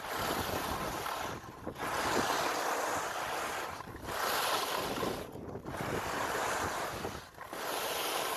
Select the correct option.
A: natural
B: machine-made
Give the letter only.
A